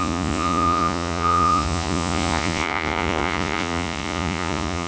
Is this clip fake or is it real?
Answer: fake